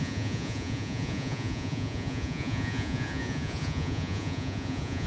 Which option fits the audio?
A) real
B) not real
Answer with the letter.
B